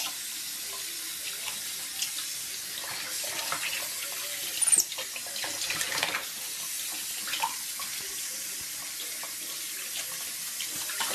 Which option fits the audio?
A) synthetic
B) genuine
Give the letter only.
B